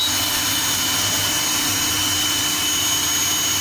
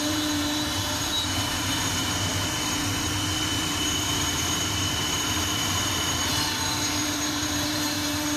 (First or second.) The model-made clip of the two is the second